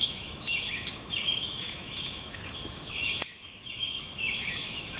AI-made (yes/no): yes